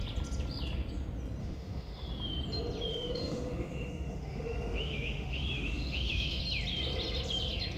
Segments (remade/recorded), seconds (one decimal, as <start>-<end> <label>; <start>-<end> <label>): 0.0-1.4 recorded; 1.4-2.1 remade; 2.1-2.9 recorded; 2.9-6.4 remade; 6.4-7.8 recorded